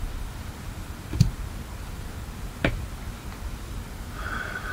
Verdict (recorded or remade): recorded